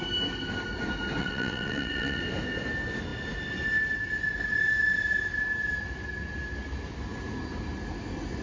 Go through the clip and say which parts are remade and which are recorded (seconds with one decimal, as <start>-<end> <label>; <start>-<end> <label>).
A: 0.0-1.2 recorded; 1.2-2.2 remade; 2.2-8.4 recorded